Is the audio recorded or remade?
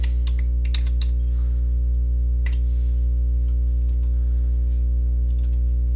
recorded